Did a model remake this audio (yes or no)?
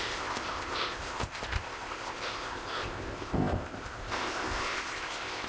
yes